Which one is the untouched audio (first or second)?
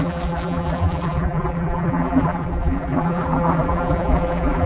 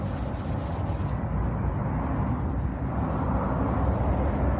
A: second